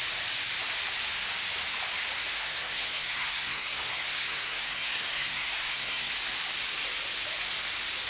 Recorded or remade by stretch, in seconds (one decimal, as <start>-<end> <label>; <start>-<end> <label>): 0.0-2.3 recorded; 2.3-6.1 remade; 6.1-8.1 recorded